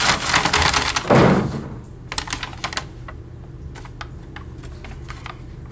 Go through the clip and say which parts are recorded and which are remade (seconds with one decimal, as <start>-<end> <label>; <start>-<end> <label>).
0.0-5.7 recorded